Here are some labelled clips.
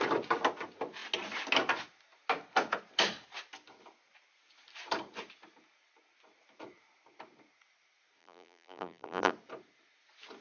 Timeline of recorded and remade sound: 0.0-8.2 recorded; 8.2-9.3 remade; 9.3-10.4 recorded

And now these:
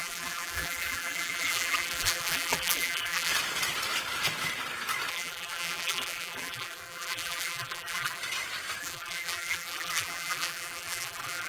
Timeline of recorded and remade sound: 0.0-3.3 remade; 3.3-5.1 recorded; 5.1-8.2 remade; 8.2-8.8 recorded; 8.8-11.5 remade

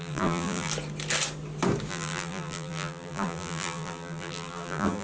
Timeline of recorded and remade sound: 0.0-0.7 remade; 0.7-1.9 recorded; 1.9-5.0 remade

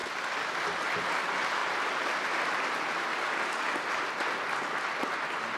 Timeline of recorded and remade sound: 0.0-5.6 recorded

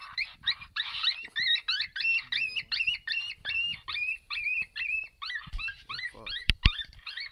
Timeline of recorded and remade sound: 0.0-3.7 recorded; 3.7-6.6 remade; 6.6-7.3 recorded

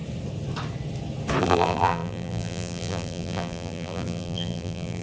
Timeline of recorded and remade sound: 0.0-1.4 recorded; 1.4-5.0 remade

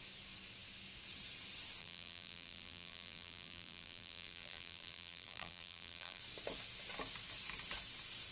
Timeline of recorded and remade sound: 0.0-1.8 recorded; 1.8-6.2 remade; 6.2-8.3 recorded

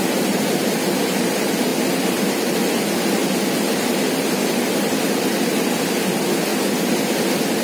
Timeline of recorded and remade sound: 0.0-7.6 recorded